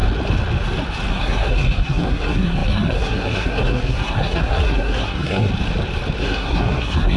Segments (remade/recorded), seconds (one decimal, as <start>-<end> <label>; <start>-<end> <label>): 0.0-1.1 recorded; 1.1-5.5 remade; 5.5-6.2 recorded; 6.2-7.2 remade

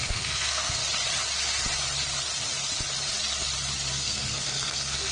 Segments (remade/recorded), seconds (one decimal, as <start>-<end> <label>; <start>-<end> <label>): 0.0-0.8 remade; 0.8-3.9 recorded; 3.9-5.1 remade

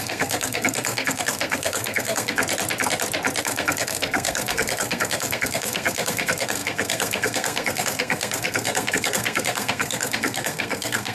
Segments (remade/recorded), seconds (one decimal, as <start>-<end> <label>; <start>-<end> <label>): 0.0-2.4 remade; 2.4-3.4 recorded; 3.4-11.1 remade

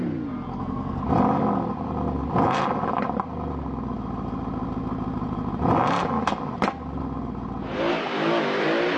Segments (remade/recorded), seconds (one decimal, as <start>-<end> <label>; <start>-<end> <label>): 0.0-0.5 recorded; 0.5-1.0 remade; 1.0-9.0 recorded

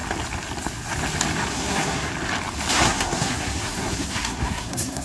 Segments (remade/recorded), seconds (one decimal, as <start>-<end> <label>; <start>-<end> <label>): 0.0-1.5 recorded; 1.5-2.1 remade; 2.1-2.7 recorded; 2.7-5.0 remade

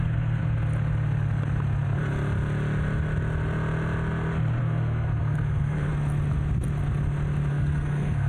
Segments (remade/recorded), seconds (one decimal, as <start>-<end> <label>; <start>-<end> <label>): 0.0-0.4 remade; 0.4-4.6 recorded; 4.6-5.9 remade; 5.9-7.5 recorded; 7.5-8.3 remade

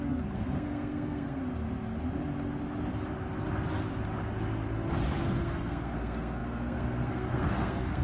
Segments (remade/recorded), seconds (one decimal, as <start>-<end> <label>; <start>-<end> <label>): 0.0-1.4 remade; 1.4-5.4 recorded; 5.4-8.0 remade

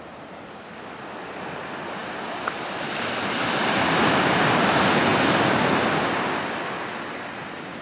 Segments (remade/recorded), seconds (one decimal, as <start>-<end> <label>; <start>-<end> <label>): 0.0-7.8 recorded